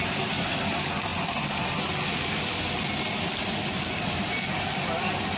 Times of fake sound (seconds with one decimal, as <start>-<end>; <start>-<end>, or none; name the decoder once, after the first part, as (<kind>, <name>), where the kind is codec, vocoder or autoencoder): 0.0-5.4 (vocoder, BigVGAN v2)